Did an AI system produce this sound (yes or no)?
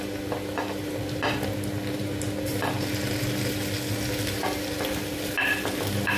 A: no